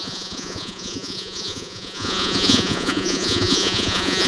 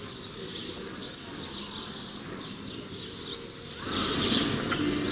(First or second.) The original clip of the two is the second